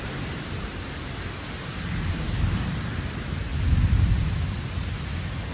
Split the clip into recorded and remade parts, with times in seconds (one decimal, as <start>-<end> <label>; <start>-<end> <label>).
0.0-3.5 remade; 3.5-4.1 recorded; 4.1-5.5 remade